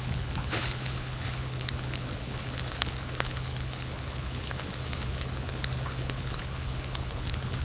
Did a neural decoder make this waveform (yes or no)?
yes